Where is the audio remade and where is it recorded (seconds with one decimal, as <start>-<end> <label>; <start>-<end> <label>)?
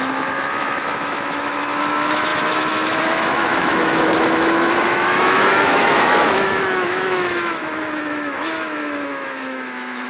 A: 0.0-10.1 remade